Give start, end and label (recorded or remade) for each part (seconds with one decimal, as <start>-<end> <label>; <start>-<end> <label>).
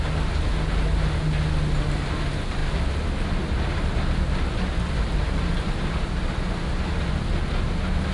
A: 0.0-8.1 recorded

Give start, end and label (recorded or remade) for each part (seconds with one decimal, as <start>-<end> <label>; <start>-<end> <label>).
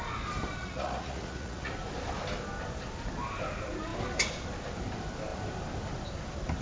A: 0.0-0.6 recorded; 0.6-1.7 remade; 1.7-6.6 recorded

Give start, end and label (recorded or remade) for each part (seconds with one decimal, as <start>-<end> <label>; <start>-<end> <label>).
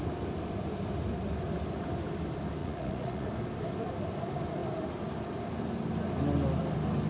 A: 0.0-2.6 recorded; 2.6-3.3 remade; 3.3-7.1 recorded